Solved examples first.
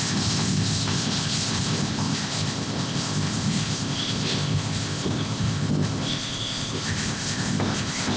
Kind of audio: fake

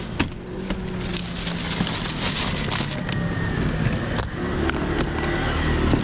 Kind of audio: real